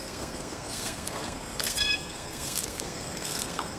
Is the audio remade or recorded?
remade